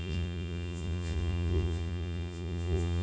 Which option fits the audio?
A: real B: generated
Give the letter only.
B